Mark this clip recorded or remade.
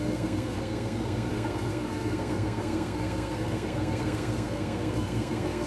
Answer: remade